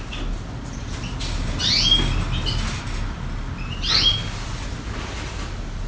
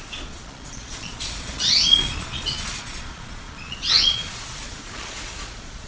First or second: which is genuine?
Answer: first